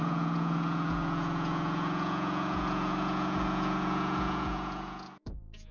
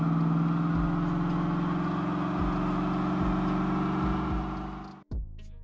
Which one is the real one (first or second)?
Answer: second